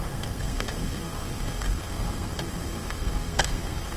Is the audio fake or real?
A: fake